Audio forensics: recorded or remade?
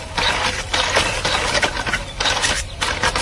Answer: recorded